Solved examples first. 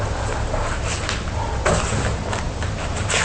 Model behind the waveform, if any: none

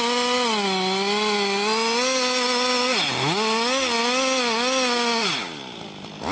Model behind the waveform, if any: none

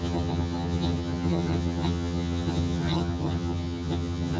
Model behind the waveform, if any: vocoder, HiFi-GAN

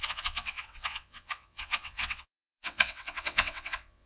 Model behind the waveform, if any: vocoder, WaveNeXt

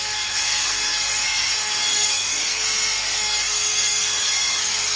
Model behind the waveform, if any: codec, SNAC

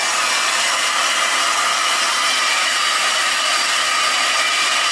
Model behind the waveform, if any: none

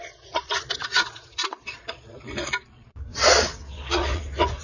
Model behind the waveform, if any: vocoder, Vocos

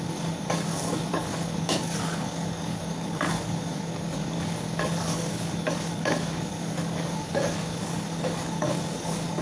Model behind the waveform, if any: codec, DAC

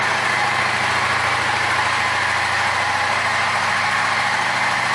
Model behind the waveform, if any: none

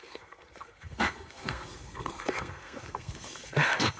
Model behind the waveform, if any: codec, SNAC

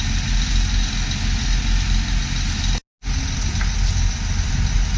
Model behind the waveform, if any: none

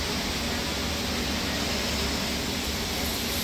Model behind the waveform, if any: none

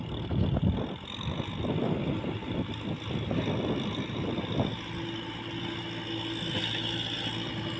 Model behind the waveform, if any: none